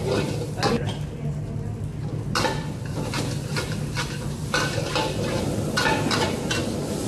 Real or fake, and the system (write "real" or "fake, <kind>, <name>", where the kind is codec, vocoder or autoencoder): real